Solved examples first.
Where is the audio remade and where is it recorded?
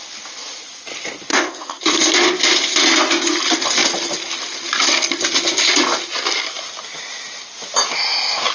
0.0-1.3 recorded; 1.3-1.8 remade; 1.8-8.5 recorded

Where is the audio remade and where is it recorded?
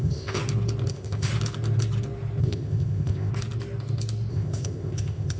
0.0-0.4 remade; 0.4-0.9 recorded; 0.9-1.3 remade; 1.3-2.4 recorded; 2.4-3.3 remade; 3.3-4.3 recorded; 4.3-5.4 remade